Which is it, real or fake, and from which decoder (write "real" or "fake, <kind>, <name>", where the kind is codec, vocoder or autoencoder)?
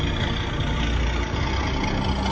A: real